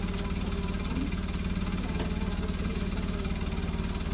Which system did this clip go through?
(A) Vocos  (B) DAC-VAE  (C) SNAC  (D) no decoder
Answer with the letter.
D